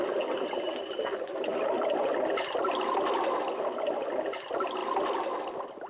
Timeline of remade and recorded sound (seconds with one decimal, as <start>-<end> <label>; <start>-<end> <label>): 0.0-5.9 recorded